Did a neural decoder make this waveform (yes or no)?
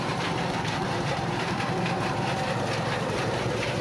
yes